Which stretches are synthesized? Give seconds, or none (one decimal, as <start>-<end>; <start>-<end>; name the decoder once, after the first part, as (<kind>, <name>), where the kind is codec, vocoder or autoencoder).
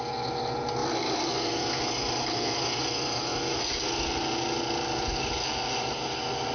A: none